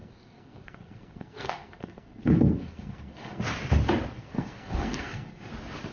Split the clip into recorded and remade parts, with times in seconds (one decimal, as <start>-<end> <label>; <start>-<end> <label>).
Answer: 0.0-3.4 remade; 3.4-4.2 recorded; 4.2-5.5 remade; 5.5-5.9 recorded

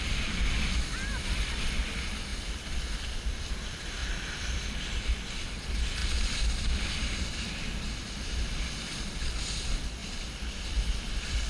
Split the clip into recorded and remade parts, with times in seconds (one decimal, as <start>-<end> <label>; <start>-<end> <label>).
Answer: 0.0-2.3 remade; 2.3-3.2 recorded; 3.2-11.5 remade

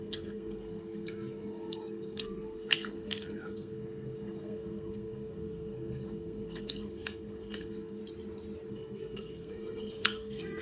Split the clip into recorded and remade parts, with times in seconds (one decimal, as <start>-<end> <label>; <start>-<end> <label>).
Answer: 0.0-8.0 remade; 8.0-8.7 recorded; 8.7-10.6 remade

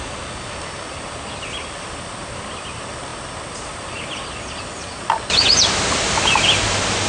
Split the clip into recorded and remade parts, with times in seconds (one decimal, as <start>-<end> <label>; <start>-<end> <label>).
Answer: 0.0-7.1 recorded

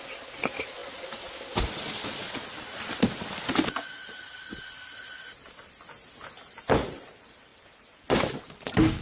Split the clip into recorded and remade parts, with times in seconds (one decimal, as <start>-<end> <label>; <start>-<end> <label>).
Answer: 0.0-9.0 recorded

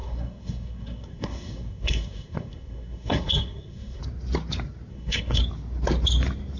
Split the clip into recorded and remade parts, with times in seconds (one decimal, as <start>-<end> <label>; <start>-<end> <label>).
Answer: 0.0-4.0 remade; 4.0-4.9 recorded; 4.9-5.4 remade; 5.4-6.6 recorded

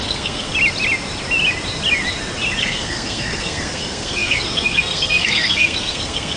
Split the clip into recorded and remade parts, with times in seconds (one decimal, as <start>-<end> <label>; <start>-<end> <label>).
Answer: 0.0-0.5 remade; 0.5-2.6 recorded; 2.6-6.4 remade